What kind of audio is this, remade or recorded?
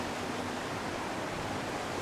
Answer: recorded